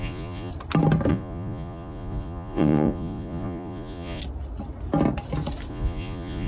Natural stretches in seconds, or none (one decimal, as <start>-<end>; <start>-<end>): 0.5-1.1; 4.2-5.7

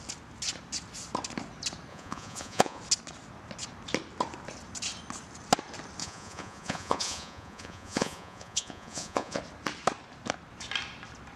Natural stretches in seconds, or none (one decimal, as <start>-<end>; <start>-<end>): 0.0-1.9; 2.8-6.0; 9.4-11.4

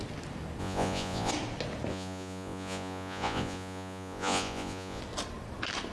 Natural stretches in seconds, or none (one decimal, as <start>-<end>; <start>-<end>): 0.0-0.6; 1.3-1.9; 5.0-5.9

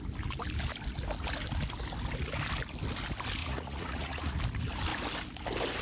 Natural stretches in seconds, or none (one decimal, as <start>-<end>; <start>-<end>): 0.0-3.4; 4.4-5.8

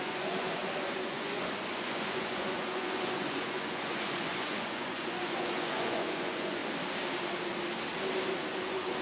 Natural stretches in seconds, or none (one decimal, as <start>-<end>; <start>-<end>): 6.6-8.5

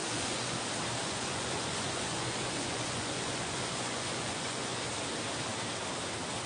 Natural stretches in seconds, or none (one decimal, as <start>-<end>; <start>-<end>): 0.6-1.0; 4.9-6.5